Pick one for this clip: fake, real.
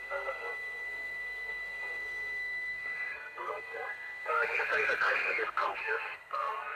fake